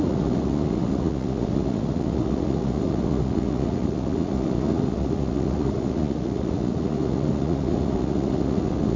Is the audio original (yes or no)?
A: no